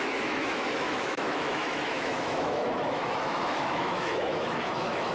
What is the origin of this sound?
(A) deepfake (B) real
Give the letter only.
A